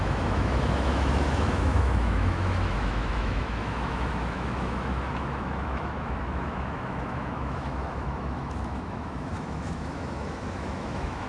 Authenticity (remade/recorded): remade